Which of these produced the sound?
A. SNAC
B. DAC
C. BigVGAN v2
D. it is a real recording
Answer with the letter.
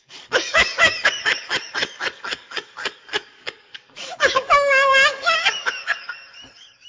B